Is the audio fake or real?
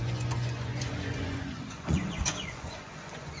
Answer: fake